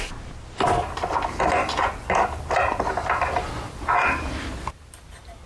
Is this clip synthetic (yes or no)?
no